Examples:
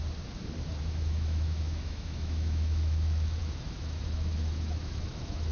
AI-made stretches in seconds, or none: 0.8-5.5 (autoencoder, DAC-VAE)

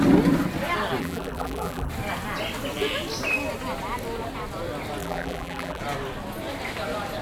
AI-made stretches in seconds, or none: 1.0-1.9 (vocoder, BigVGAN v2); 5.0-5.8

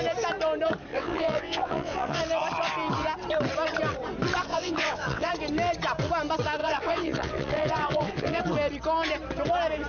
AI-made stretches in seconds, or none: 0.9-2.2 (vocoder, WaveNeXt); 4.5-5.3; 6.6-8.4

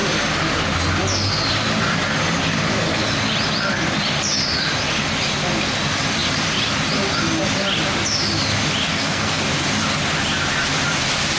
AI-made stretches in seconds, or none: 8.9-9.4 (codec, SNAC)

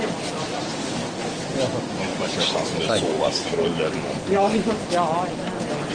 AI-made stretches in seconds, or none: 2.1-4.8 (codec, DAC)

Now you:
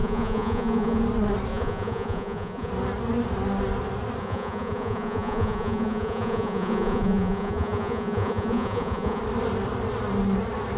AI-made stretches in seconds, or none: 0.0-1.0 (vocoder, Vocos); 1.5-2.7; 4.2-9.2

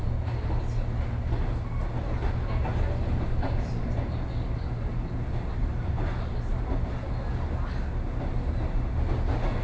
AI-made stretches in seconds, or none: none